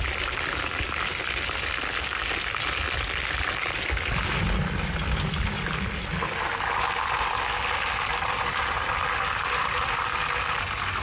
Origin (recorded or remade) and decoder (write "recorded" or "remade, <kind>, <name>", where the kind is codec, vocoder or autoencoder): recorded